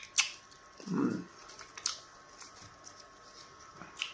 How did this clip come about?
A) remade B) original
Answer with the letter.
B